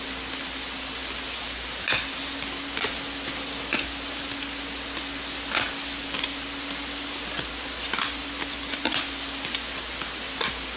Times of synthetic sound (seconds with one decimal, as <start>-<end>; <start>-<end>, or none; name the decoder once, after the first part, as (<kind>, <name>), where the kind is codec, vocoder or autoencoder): none